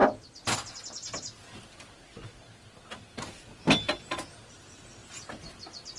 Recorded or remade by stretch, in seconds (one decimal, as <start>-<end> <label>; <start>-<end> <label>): 0.0-6.0 recorded